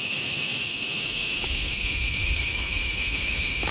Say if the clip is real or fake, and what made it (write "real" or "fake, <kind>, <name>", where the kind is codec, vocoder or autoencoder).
fake, autoencoder, DAC-VAE